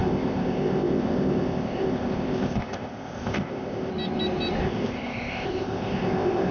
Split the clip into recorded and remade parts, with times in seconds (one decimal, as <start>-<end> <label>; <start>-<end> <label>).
0.0-3.9 remade; 3.9-4.6 recorded; 4.6-6.5 remade